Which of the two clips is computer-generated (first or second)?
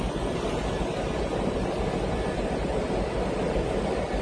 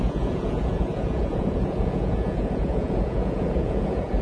second